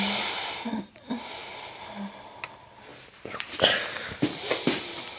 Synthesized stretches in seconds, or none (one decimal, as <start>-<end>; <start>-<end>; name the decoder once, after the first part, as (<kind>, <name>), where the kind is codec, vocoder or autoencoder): none